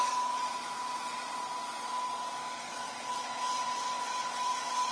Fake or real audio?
fake